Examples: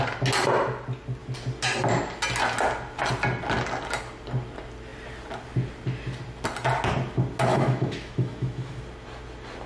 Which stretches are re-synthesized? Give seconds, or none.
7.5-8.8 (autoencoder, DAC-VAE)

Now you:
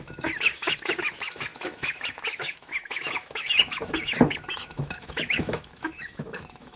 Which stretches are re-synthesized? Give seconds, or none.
0.0-6.8 (autoencoder, DAC-VAE)

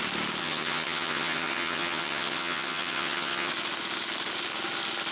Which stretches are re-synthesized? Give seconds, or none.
0.4-3.5 (vocoder, HiFi-GAN)

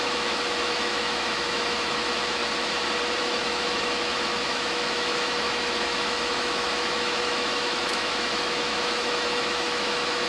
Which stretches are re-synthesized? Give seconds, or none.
0.0-2.4 (autoencoder, DAC-VAE); 3.2-10.3

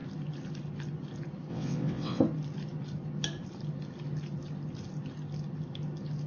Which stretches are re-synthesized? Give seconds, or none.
1.5-2.2 (vocoder, WaveNeXt)

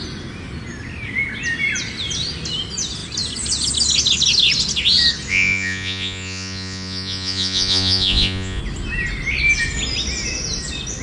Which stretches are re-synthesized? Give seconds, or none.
5.3-8.6 (vocoder, Vocos)

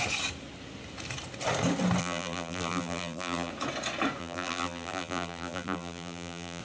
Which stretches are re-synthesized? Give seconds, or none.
2.0-3.5 (vocoder, BigVGAN v2); 4.2-6.6

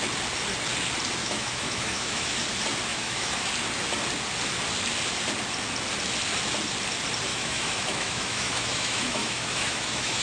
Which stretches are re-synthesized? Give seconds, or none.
1.2-2.4 (autoencoder, DAC-VAE); 2.9-3.5; 7.3-10.2